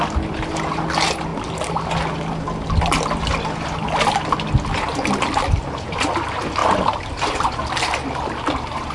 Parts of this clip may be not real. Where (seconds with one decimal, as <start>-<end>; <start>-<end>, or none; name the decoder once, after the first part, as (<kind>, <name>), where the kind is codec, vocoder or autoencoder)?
6.6-8.9 (vocoder, BigVGAN v2)